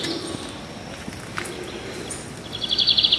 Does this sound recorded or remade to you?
recorded